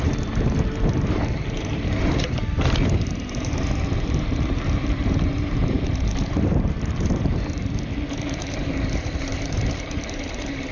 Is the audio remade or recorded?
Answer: remade